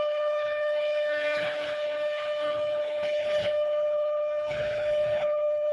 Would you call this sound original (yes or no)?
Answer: no